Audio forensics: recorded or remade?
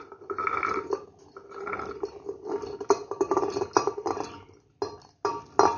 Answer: recorded